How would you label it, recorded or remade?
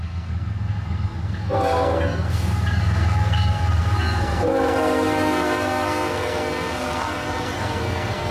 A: remade